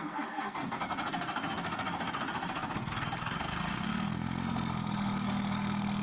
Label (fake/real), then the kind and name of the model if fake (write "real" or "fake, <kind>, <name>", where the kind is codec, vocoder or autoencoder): fake, codec, SNAC